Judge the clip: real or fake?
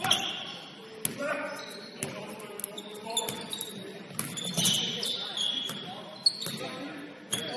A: real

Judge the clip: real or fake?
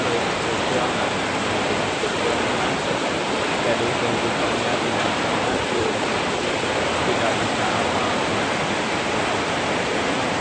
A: real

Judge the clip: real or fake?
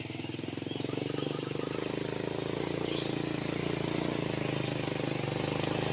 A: real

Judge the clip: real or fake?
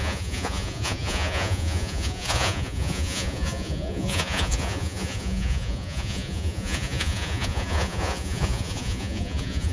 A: fake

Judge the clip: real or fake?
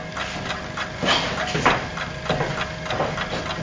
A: real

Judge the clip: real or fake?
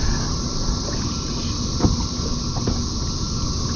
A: real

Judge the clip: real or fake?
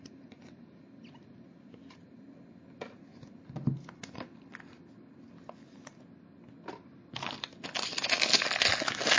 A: real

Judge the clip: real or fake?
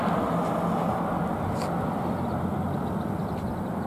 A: real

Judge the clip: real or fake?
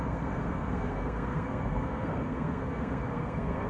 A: fake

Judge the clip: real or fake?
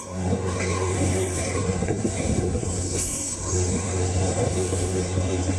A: fake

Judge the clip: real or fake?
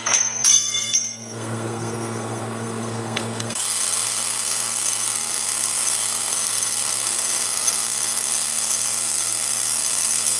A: fake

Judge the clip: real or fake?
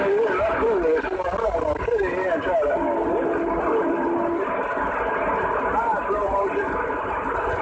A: real